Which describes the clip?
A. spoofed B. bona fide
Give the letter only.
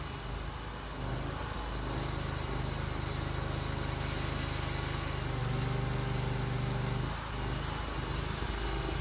B